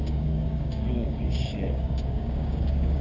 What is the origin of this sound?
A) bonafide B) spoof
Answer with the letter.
B